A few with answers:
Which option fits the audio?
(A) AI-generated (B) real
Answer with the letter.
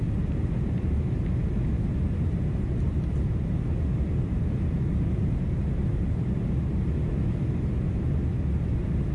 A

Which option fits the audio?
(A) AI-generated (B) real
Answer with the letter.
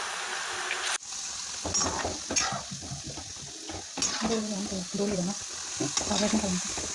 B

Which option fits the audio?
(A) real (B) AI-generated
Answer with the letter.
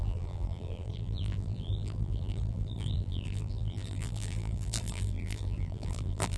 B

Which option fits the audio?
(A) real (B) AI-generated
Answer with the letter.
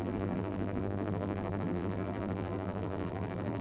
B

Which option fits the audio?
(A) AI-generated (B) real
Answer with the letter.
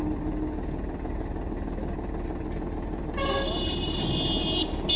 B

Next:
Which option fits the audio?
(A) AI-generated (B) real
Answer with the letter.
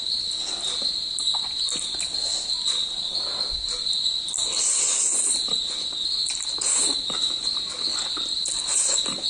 B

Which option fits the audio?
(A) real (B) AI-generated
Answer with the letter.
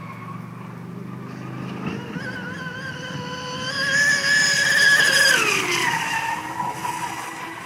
A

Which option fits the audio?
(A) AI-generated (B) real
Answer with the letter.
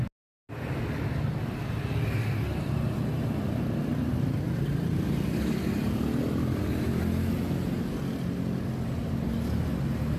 B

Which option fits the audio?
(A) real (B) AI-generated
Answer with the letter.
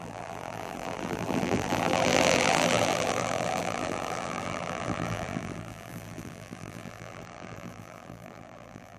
B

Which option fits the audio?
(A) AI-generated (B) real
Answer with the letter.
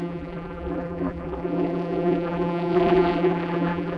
A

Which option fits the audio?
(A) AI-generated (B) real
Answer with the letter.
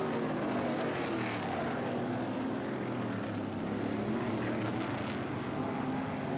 B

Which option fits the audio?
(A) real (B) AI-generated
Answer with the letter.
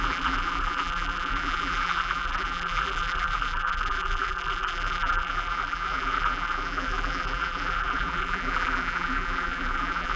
B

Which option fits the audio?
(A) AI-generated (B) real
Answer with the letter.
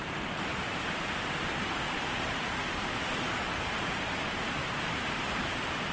A